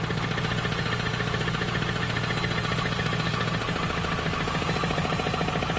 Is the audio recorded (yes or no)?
yes